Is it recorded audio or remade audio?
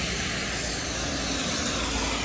recorded